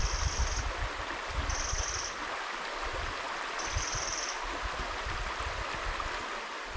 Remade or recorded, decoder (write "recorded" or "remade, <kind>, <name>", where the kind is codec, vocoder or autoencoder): recorded